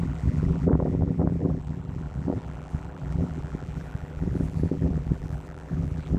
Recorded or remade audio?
remade